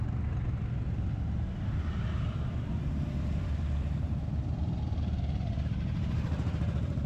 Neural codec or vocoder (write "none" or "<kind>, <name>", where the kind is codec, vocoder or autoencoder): vocoder, BigVGAN v2